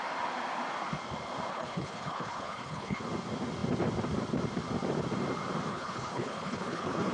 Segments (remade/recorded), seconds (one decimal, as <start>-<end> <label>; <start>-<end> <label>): 0.0-1.5 recorded; 1.5-3.0 remade; 3.0-5.7 recorded; 5.7-7.1 remade